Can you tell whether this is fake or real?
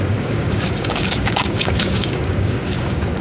fake